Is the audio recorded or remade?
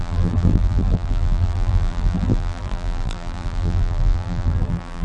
remade